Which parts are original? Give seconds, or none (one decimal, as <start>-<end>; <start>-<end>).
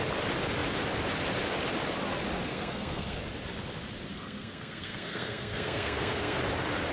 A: 0.0-2.5; 3.2-4.1; 6.4-6.9